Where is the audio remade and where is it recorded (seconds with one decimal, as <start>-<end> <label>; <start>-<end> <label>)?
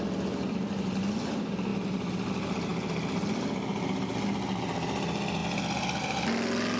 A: 0.0-5.4 recorded; 5.4-6.0 remade; 6.0-6.8 recorded